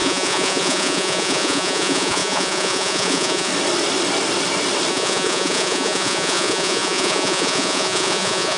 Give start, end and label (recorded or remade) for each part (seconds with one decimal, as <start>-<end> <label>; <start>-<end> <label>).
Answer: 0.0-3.5 remade; 3.5-4.9 recorded; 4.9-8.6 remade